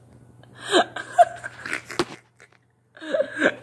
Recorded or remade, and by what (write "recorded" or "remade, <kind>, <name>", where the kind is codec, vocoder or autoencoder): recorded